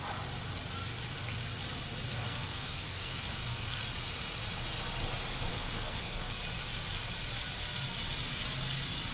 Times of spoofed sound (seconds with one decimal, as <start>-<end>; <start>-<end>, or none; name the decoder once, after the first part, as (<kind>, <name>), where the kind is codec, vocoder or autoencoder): 2.1-3.8 (codec, SNAC); 5.5-6.4